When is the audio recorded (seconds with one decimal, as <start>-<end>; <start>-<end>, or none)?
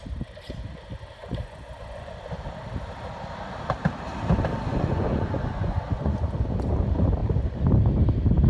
0.0-1.2; 2.2-4.7; 6.4-8.5